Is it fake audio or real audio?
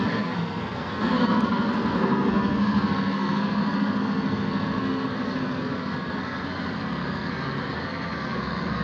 fake